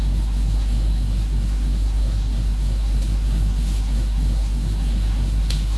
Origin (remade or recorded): remade